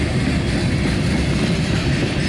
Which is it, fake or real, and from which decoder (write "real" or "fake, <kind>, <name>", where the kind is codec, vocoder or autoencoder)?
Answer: real